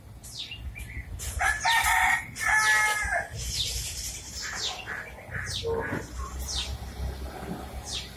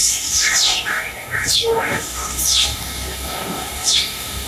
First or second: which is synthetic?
second